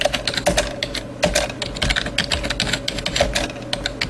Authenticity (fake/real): real